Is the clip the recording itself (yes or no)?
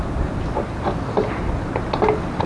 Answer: yes